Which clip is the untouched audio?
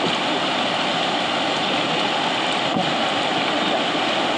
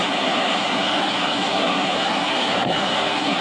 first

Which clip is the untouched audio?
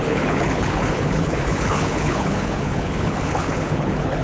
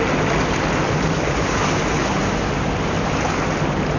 second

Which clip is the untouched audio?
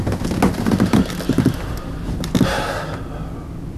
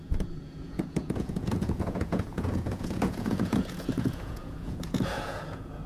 first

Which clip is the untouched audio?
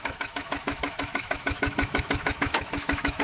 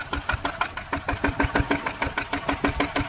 second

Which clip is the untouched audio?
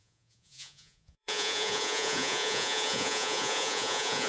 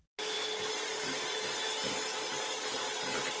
second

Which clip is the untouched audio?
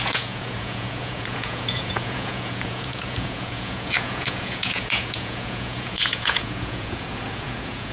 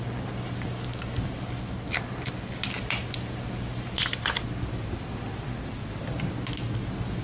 second